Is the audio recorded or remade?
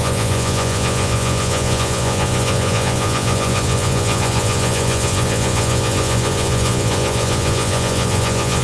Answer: remade